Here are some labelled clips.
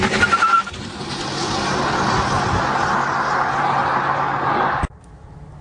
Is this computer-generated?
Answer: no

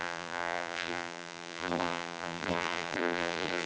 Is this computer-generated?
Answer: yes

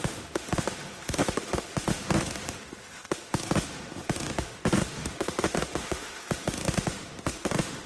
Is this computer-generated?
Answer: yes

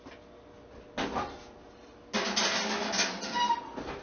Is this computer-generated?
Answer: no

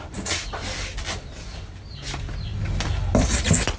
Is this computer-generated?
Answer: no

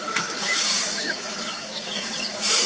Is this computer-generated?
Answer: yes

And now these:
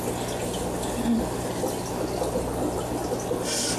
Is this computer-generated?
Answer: no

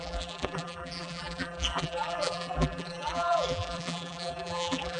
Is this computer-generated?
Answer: yes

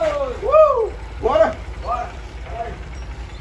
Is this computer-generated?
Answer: yes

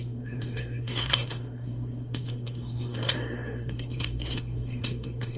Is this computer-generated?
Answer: yes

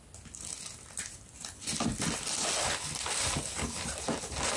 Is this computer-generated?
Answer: no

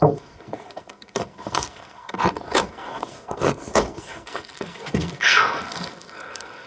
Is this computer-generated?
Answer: yes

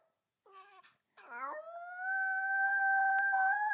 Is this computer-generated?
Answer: no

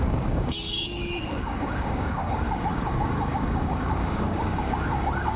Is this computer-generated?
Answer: yes